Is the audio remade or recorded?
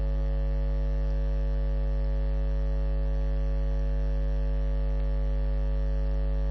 recorded